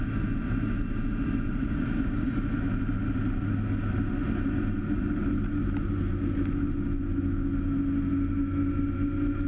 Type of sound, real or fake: real